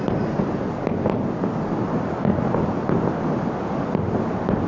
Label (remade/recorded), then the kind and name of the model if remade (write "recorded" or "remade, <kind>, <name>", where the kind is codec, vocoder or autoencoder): recorded